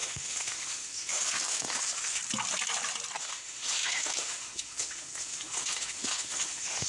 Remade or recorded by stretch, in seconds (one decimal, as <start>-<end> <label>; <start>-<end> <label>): 0.0-2.2 remade; 2.2-3.2 recorded; 3.2-6.9 remade